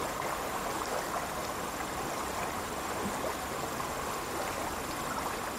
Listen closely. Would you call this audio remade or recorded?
recorded